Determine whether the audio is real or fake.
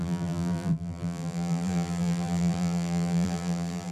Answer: fake